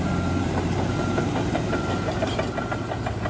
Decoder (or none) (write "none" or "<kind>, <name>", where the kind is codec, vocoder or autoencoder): vocoder, BigVGAN v2